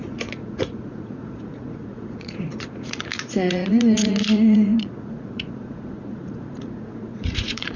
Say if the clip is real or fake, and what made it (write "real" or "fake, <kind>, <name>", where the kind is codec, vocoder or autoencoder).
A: fake, vocoder, Vocos